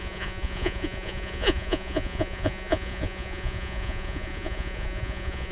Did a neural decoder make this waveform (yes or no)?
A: yes